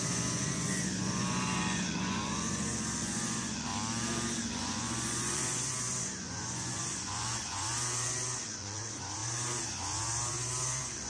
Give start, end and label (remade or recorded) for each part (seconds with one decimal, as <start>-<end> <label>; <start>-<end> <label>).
0.0-3.7 remade; 3.7-4.5 recorded; 4.5-11.1 remade